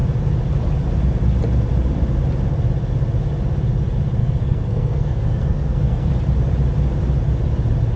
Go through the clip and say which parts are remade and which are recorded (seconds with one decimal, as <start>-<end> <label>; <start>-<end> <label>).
0.0-4.2 recorded; 4.2-6.1 remade; 6.1-8.0 recorded